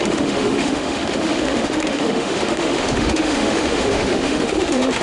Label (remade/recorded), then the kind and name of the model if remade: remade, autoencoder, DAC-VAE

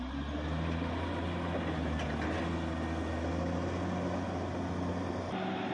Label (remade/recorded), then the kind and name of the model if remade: recorded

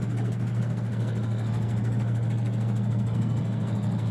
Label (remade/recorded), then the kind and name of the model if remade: remade, codec, SNAC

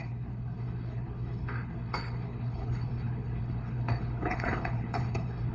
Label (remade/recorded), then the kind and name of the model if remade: remade, codec, HILCodec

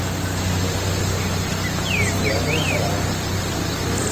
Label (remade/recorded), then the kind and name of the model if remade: recorded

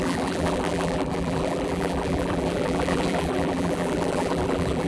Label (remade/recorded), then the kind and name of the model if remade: remade, vocoder, BigVGAN v2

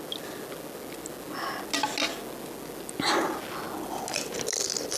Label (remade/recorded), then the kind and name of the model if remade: recorded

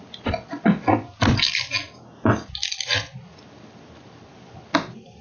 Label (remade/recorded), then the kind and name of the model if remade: recorded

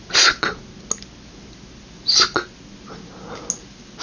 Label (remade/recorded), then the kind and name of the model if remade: recorded